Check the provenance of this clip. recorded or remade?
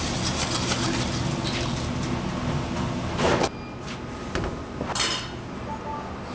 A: recorded